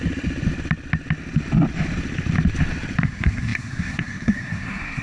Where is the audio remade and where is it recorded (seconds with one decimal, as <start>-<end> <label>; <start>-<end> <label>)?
0.0-3.0 recorded; 3.0-5.0 remade